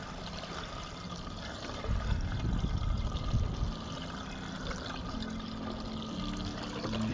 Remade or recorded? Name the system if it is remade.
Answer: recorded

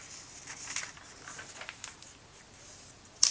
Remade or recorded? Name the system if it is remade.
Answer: recorded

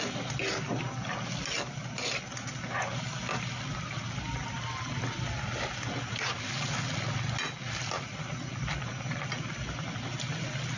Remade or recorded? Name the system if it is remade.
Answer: recorded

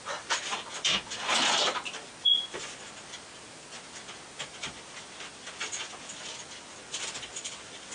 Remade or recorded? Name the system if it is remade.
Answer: recorded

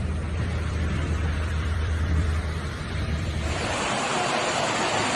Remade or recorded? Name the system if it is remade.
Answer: remade, vocoder, BigVGAN v2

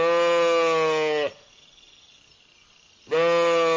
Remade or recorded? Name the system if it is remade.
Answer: recorded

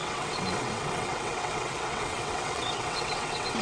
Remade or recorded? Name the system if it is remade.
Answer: remade, vocoder, WaveNeXt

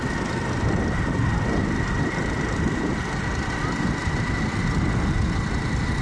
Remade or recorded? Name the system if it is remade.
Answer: recorded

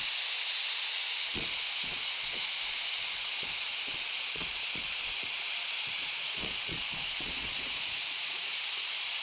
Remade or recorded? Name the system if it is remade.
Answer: remade, vocoder, Vocos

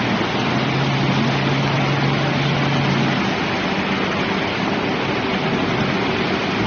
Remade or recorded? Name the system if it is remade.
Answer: recorded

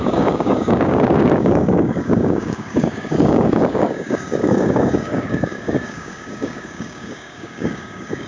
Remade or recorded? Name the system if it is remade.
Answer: remade, codec, DAC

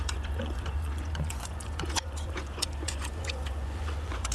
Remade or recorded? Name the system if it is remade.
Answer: remade, vocoder, Vocos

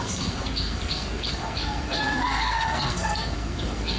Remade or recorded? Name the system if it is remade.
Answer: remade, codec, SNAC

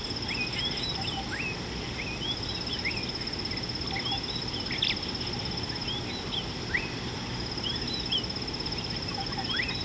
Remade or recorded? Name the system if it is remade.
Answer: recorded